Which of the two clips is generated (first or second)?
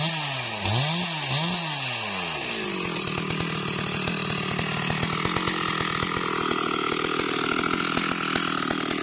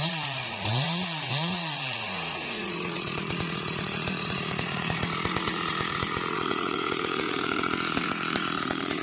second